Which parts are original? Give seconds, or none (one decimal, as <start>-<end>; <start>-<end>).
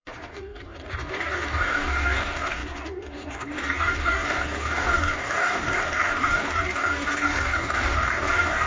none